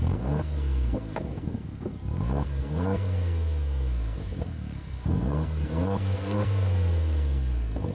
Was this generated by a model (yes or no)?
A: yes